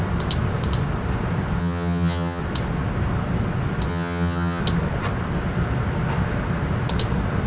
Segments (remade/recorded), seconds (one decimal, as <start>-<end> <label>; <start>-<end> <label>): 0.0-1.6 recorded; 1.6-2.4 remade; 2.4-3.9 recorded; 3.9-4.6 remade; 4.6-7.5 recorded